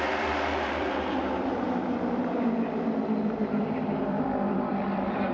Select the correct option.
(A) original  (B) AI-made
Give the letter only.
B